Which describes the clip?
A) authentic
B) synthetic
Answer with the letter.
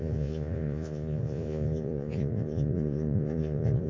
B